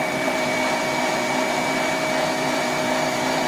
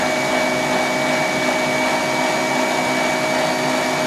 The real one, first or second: second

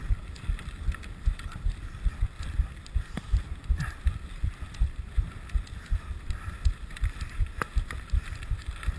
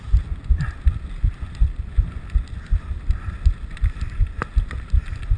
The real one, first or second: second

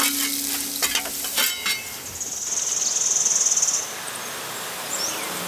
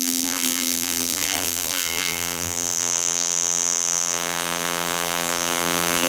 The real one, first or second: first